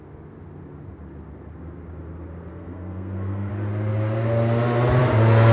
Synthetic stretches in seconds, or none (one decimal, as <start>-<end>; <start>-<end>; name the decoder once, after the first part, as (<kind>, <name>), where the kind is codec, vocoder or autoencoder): 2.5-3.5 (codec, SNAC)